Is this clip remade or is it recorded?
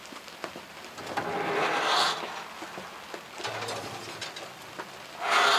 recorded